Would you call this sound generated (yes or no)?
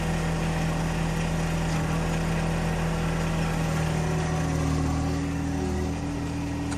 no